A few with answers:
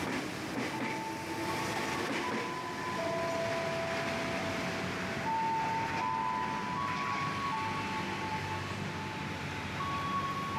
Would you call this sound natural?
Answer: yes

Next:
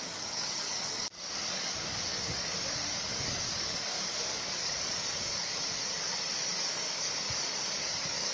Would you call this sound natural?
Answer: no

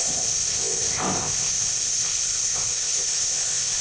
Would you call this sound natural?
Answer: no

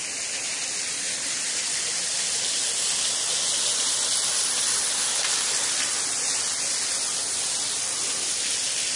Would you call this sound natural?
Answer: yes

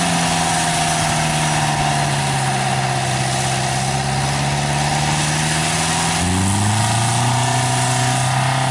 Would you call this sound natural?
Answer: yes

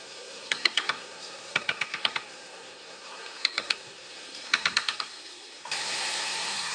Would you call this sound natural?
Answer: no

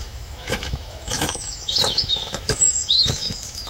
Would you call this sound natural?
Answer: no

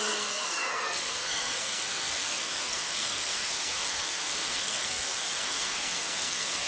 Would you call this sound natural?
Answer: no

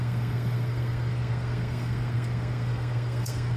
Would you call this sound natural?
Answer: no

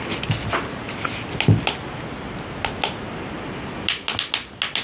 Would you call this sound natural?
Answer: yes